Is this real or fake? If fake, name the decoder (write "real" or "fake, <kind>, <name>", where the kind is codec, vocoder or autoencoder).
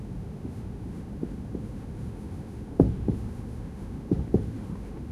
fake, autoencoder, DAC-VAE